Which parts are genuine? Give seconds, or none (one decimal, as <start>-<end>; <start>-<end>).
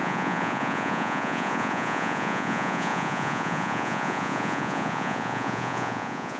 none